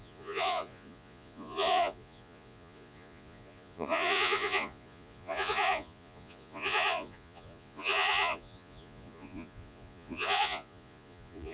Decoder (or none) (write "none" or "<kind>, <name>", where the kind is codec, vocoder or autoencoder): vocoder, Vocos